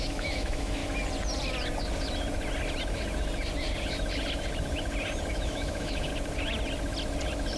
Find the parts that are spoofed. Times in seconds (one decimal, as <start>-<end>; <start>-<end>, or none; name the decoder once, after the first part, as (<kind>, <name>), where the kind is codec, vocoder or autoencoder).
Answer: 0.0-0.8 (autoencoder, DAC-VAE); 5.3-6.1